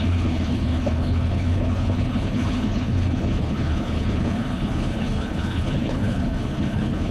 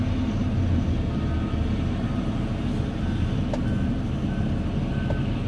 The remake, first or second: first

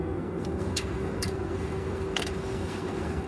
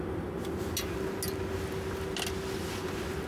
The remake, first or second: first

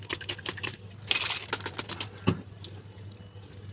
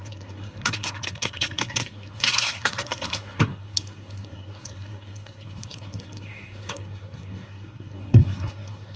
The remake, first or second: second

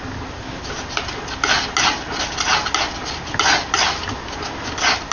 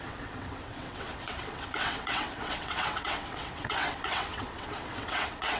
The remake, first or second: second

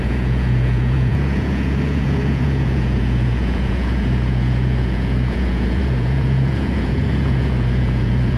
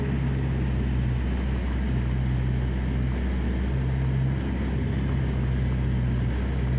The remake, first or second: first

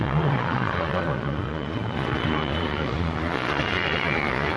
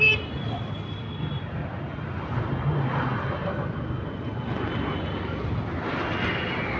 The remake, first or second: first